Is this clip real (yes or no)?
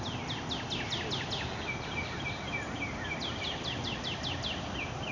yes